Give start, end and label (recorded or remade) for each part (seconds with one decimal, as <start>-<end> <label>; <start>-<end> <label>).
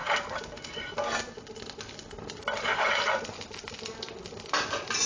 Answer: 0.0-1.4 remade; 1.4-2.7 recorded; 2.7-3.7 remade; 3.7-5.1 recorded